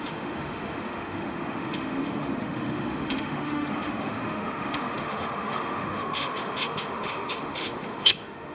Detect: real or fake fake